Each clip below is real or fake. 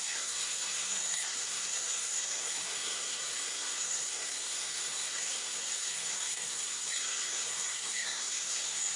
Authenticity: fake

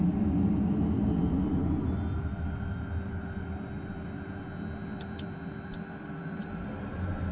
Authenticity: real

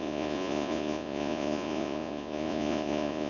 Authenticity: fake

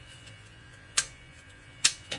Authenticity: fake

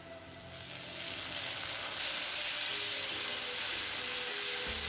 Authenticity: real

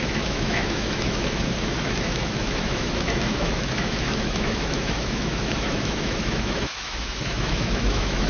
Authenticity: fake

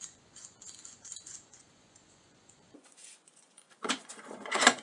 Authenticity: fake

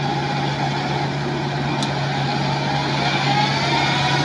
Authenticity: real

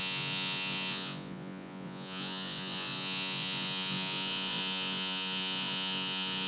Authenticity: fake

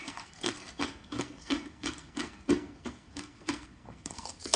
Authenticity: fake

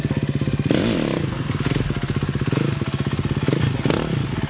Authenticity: real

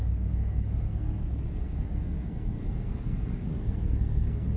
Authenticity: fake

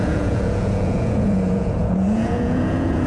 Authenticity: fake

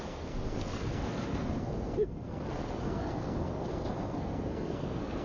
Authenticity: fake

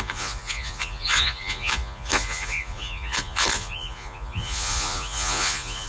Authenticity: fake